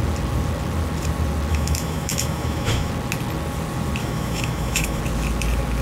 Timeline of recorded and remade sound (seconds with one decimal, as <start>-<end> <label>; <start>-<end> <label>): 0.0-1.5 recorded; 1.5-2.9 remade; 2.9-4.0 recorded; 4.0-5.0 remade; 5.0-5.8 recorded